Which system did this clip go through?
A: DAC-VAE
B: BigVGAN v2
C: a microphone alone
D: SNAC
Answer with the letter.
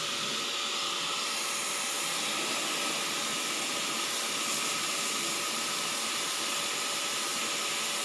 C